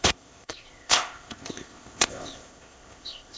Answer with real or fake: fake